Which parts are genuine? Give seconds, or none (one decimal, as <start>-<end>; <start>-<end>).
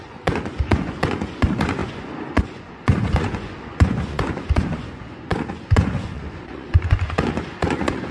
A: none